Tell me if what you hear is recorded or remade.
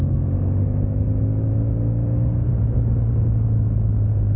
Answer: recorded